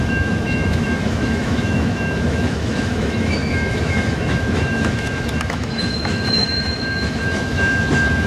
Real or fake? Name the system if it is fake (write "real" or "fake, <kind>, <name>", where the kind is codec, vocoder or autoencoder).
fake, autoencoder, DAC-VAE